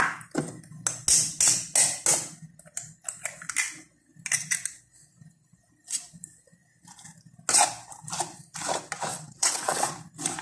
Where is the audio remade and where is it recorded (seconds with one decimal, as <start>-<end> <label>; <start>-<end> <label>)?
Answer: 0.0-9.1 recorded; 9.1-9.9 remade; 9.9-10.4 recorded